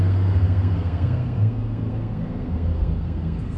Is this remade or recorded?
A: remade